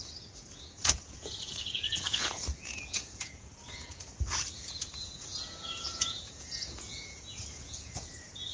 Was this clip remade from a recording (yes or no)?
yes